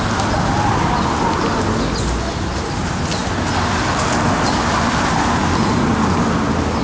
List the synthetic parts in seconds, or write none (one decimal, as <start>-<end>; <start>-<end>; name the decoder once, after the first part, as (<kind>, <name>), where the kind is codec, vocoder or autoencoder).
none